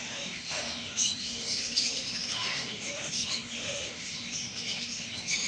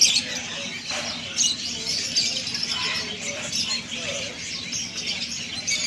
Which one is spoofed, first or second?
first